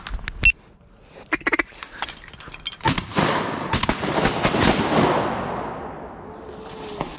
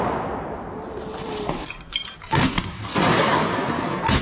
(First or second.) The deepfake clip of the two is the second